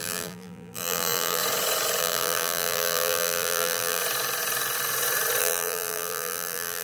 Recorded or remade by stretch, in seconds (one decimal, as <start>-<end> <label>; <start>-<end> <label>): 0.0-1.4 remade; 1.4-2.0 recorded; 2.0-4.0 remade; 4.0-5.4 recorded; 5.4-6.8 remade